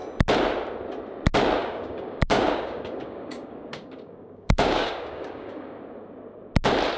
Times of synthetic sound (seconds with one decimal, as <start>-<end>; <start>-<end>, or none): 1.6-5.8